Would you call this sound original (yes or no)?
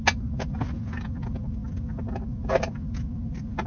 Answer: yes